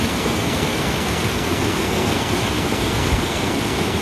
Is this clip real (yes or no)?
no